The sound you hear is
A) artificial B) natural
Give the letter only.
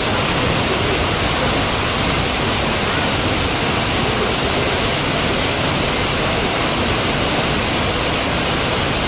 B